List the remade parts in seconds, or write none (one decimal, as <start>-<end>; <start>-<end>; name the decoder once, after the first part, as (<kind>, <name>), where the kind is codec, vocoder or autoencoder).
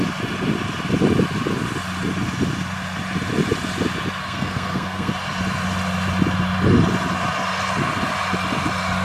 4.2-5.1 (codec, SNAC)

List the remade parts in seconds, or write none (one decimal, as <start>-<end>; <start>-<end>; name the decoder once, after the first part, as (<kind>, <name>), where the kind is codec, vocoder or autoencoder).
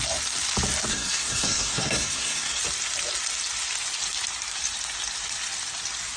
0.9-2.6 (codec, SNAC)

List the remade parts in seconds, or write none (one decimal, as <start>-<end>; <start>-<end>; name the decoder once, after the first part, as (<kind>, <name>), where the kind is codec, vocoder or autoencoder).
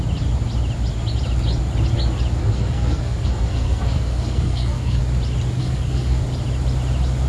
2.4-5.0 (codec, SNAC); 5.6-6.2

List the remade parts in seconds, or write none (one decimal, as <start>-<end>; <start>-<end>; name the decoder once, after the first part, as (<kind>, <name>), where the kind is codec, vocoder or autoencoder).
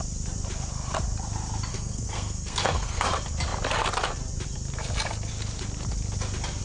1.7-3.1 (codec, SNAC)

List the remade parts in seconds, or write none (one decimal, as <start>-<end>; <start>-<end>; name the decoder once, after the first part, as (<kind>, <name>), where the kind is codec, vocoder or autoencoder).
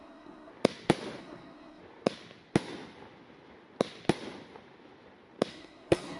0.0-0.5 (codec, SNAC); 1.2-1.8; 5.5-6.2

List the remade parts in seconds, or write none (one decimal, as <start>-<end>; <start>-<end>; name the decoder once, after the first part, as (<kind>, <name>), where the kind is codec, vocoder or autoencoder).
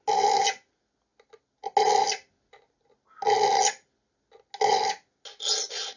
none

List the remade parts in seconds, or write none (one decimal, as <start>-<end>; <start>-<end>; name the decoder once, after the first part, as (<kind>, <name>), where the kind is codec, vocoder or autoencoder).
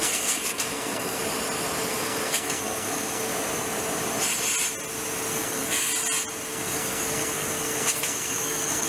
0.0-1.2 (codec, SNAC); 1.9-3.3; 5.3-5.9; 6.5-8.9